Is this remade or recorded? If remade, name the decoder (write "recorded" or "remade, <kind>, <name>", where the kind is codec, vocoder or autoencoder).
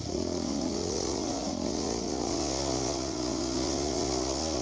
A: remade, vocoder, Vocos